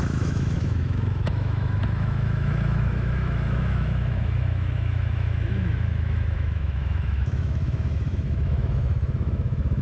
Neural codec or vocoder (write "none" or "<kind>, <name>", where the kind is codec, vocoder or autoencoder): autoencoder, DAC-VAE